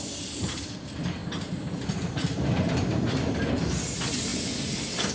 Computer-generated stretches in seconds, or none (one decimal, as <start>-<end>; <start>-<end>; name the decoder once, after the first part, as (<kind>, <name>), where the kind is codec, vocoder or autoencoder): none